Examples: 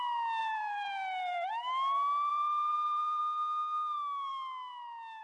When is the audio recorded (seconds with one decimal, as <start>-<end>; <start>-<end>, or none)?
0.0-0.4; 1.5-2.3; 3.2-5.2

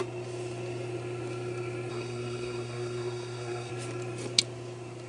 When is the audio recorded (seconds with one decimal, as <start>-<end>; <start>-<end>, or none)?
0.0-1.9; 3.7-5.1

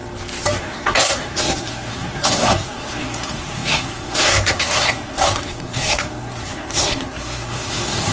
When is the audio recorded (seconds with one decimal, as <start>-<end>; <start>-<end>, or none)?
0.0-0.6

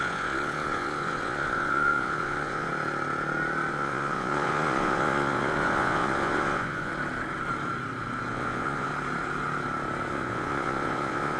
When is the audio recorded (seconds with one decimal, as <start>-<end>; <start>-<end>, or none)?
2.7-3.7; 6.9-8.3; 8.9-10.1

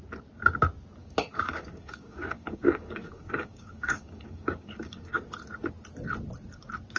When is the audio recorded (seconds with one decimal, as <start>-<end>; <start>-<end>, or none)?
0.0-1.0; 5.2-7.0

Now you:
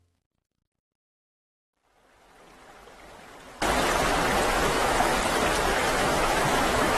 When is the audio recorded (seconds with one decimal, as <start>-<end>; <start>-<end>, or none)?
0.6-4.5; 5.1-5.7

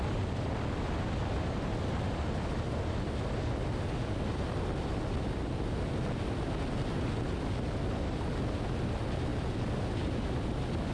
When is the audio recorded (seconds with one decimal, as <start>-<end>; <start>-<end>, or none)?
0.0-10.9

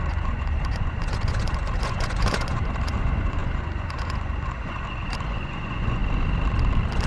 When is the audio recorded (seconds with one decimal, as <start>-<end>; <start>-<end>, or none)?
6.0-7.1